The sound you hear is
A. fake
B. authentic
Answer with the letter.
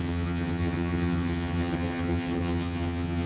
A